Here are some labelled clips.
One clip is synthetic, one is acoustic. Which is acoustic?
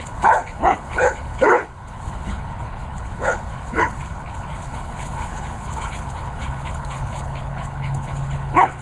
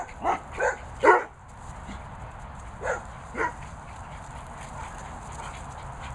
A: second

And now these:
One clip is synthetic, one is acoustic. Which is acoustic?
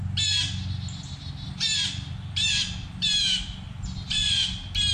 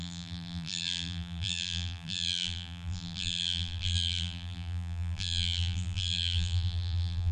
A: first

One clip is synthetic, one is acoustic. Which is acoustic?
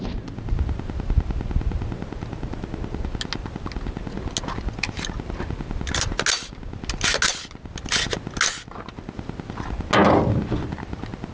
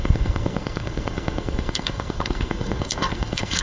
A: first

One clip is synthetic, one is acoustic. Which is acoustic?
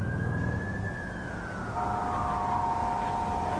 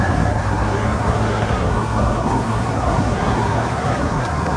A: first